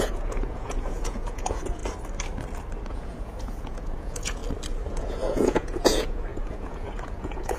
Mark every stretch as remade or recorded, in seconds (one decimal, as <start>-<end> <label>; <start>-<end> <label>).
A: 0.0-1.8 remade; 1.8-2.9 recorded; 2.9-4.4 remade; 4.4-5.0 recorded; 5.0-7.6 remade